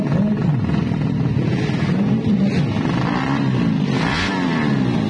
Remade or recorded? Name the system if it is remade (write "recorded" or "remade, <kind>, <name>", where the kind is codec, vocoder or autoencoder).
recorded